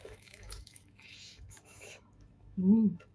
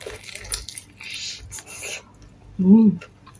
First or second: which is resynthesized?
first